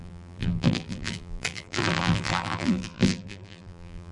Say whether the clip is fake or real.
fake